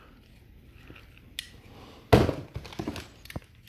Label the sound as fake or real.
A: real